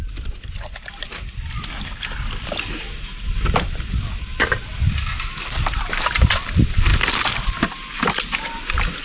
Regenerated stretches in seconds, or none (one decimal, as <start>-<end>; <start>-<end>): 0.0-1.1; 5.8-6.9